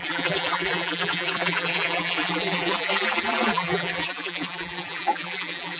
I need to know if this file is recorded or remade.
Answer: remade